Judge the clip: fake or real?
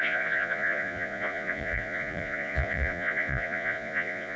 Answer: fake